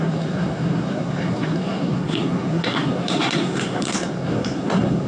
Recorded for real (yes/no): no